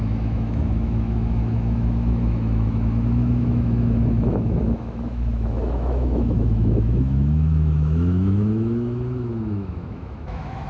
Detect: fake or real fake